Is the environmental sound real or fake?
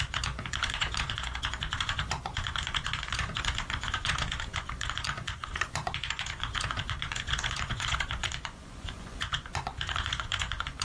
fake